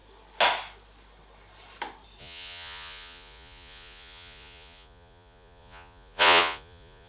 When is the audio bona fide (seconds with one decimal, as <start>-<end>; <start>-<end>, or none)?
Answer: 0.0-2.2